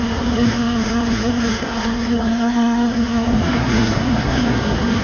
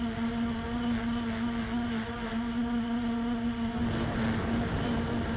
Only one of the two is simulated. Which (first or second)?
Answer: first